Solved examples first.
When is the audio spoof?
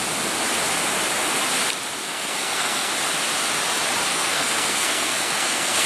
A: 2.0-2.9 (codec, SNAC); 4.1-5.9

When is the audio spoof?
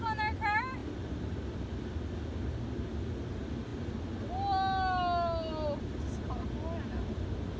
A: none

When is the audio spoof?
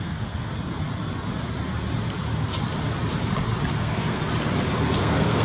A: 0.0-0.5 (codec, SNAC); 3.7-4.2; 5.0-5.4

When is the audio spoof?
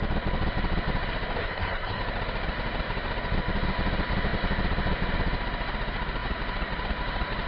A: 1.4-2.0 (codec, SNAC)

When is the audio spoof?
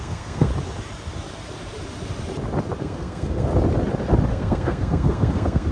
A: 0.0-0.5 (codec, SNAC); 2.8-3.5; 4.3-5.7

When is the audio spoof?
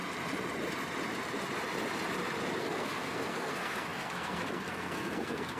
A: 2.6-5.6 (codec, SNAC)